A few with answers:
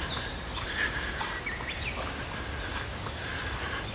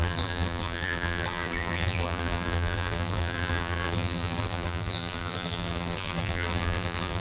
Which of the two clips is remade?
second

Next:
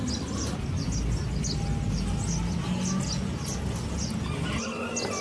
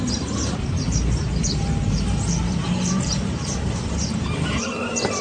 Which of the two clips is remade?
second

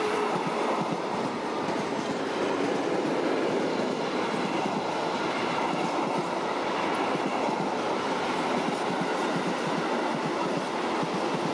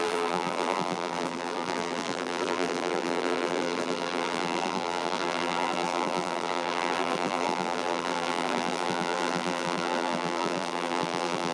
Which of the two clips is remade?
second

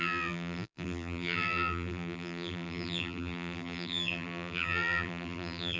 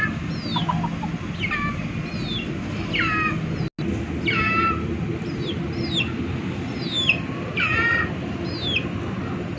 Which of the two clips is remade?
first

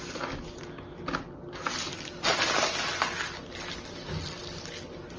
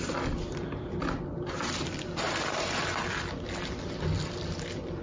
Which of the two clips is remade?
second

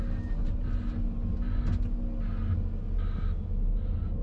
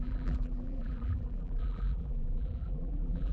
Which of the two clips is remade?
second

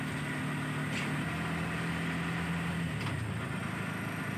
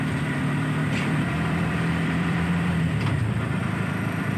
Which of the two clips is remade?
second